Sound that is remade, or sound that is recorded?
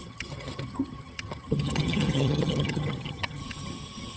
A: remade